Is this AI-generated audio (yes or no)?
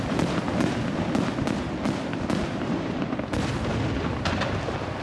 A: no